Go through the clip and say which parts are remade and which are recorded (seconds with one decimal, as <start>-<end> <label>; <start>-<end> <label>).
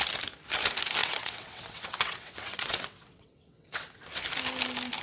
0.0-1.0 recorded; 1.0-4.0 remade; 4.0-5.0 recorded